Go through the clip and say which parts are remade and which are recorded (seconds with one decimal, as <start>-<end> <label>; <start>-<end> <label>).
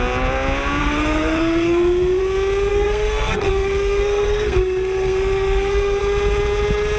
0.0-0.8 recorded; 0.8-2.2 remade; 2.2-2.7 recorded; 2.7-6.0 remade; 6.0-7.0 recorded